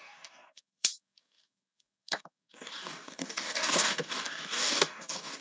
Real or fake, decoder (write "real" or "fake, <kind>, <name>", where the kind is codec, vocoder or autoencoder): fake, codec, DAC